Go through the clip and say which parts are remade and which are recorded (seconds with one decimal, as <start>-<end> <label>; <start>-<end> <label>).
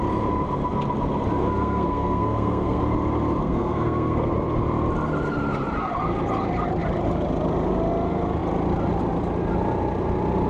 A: 0.0-1.4 recorded; 1.4-2.8 remade; 2.8-3.4 recorded; 3.4-4.3 remade; 4.3-10.5 recorded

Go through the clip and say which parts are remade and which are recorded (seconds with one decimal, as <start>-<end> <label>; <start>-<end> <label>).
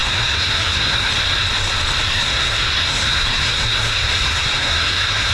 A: 0.0-1.1 remade; 1.1-2.0 recorded; 2.0-5.3 remade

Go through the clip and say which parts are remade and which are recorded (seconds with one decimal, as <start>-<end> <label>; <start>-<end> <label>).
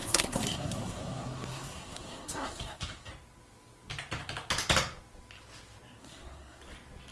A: 0.0-3.1 remade; 3.1-6.0 recorded; 6.0-6.6 remade; 6.6-7.1 recorded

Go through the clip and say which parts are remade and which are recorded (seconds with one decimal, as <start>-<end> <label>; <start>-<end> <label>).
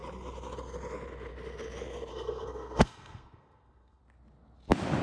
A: 0.0-2.1 recorded; 2.1-4.0 remade; 4.0-5.0 recorded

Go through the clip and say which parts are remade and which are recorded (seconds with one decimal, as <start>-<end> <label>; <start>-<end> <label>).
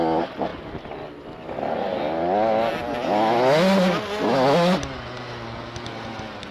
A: 0.0-6.5 recorded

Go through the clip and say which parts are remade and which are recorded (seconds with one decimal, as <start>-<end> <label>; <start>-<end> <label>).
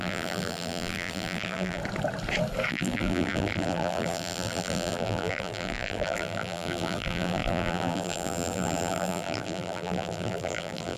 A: 0.0-1.8 remade; 1.8-2.7 recorded; 2.7-11.0 remade